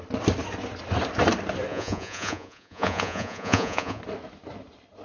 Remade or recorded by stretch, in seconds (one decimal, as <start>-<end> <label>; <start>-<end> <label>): 0.0-1.7 recorded; 1.7-4.0 remade; 4.0-5.0 recorded